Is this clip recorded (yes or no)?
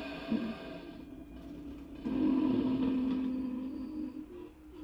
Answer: yes